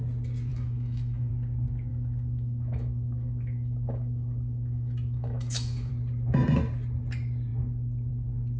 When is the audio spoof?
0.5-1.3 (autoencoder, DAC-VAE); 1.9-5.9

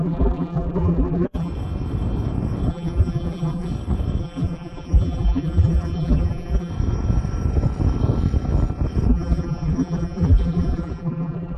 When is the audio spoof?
0.0-1.5 (vocoder, BigVGAN v2); 2.7-3.7; 4.2-6.7; 9.1-11.6

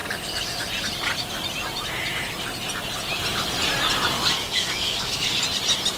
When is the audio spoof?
4.4-5.3 (codec, DAC)

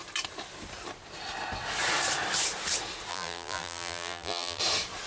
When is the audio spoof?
3.1-4.6 (vocoder, BigVGAN v2)

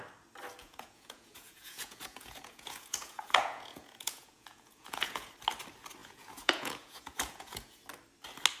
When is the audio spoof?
0.6-5.3 (vocoder, Vocos); 6.0-7.8

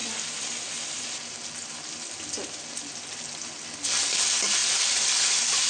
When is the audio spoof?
none

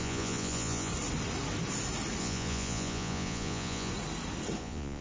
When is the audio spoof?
0.0-0.9 (vocoder, Vocos); 2.2-3.9; 4.6-5.0